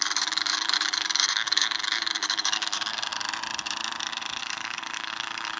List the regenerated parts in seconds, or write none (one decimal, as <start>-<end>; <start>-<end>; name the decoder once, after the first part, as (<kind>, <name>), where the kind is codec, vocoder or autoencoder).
0.0-3.1 (codec, DAC); 4.4-5.6